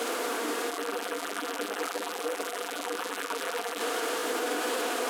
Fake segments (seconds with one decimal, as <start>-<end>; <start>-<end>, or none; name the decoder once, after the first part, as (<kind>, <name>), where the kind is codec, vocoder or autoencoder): 0.7-3.8 (vocoder, BigVGAN v2)